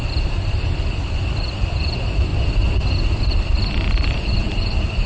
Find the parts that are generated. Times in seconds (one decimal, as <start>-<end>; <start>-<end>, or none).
0.0-2.3; 3.2-5.1